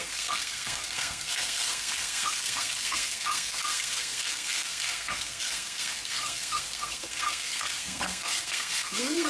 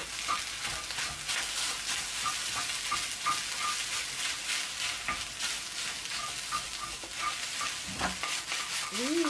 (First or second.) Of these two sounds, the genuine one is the second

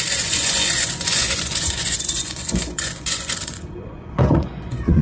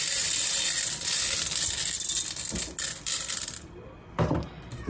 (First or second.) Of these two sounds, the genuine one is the second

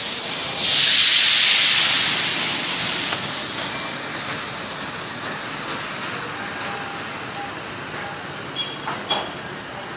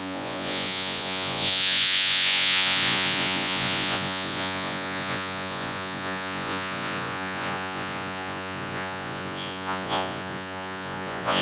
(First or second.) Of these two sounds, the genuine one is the first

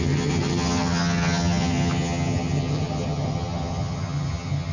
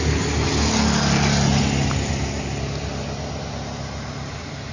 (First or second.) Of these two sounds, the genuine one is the second